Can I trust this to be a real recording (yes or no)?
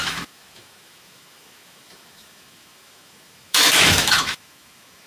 no